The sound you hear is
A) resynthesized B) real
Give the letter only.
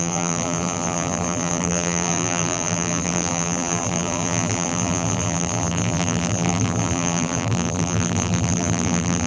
A